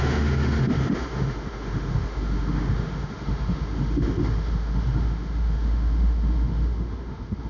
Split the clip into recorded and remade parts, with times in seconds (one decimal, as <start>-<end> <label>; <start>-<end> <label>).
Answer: 0.0-7.5 remade